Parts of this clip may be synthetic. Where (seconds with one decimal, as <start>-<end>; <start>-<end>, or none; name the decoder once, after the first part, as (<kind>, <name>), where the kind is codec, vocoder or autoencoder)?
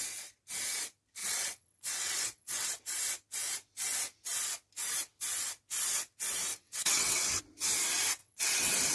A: 1.2-2.8 (vocoder, WaveNeXt); 6.5-7.4; 8.2-8.9